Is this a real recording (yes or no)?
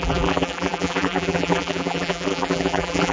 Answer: no